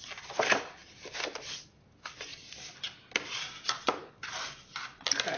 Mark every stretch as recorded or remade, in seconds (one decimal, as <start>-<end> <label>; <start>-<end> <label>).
0.0-5.4 recorded